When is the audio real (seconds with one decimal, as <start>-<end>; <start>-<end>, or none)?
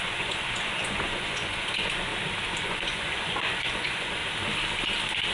2.1-2.6; 4.2-5.3